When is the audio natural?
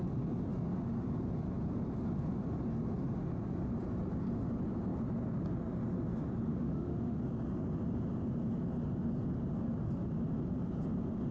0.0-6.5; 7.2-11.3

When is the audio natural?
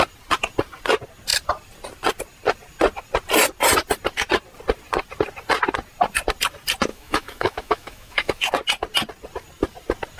0.0-6.9; 8.5-10.2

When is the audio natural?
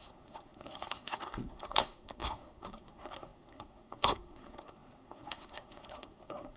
none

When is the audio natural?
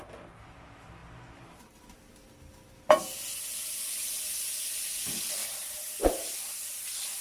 0.0-7.2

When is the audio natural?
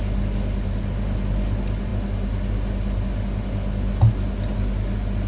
0.0-5.3